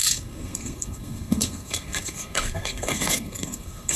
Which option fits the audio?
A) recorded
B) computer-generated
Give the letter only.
B